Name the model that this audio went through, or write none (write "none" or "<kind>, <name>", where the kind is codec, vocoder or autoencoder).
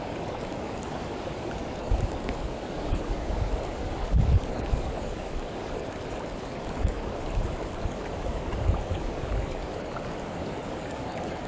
codec, DAC